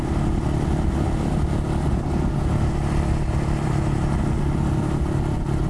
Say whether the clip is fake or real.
real